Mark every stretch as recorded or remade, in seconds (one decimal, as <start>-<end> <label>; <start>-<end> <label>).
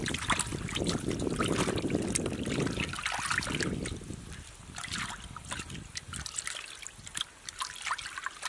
0.0-8.5 recorded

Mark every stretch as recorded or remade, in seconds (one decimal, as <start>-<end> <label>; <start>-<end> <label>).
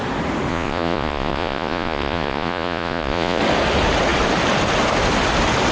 0.0-0.5 recorded; 0.5-3.4 remade; 3.4-5.7 recorded